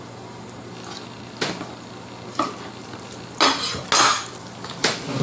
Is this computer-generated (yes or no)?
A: no